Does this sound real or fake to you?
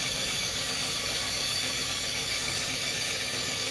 fake